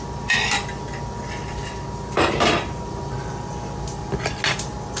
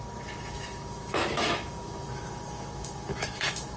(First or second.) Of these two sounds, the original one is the first